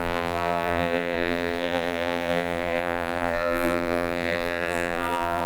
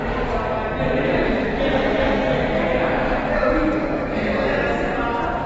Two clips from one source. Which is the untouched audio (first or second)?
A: second